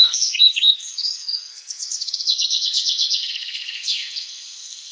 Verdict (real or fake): fake